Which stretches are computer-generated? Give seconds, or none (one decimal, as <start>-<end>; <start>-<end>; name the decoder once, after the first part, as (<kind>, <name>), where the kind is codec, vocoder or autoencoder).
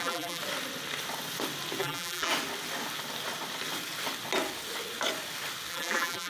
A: 0.0-0.4 (vocoder, BigVGAN v2); 1.8-2.3; 5.7-6.3